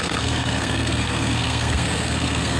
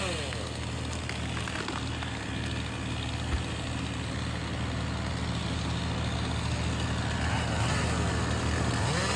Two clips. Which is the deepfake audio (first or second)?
first